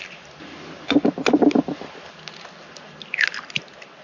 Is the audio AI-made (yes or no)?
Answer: no